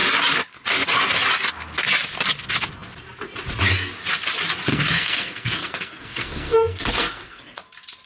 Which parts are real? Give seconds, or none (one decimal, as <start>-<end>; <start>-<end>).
0.0-4.7; 7.6-8.1